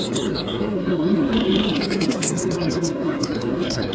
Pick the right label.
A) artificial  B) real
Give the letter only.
A